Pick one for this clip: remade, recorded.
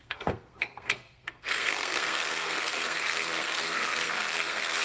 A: remade